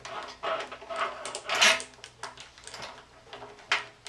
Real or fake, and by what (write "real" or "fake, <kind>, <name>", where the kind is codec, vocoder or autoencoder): real